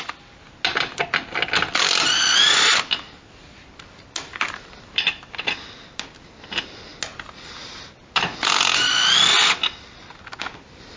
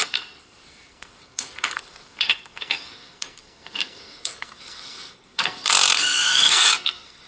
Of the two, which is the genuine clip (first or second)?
first